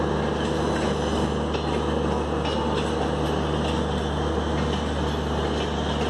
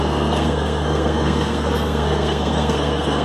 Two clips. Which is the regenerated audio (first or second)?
second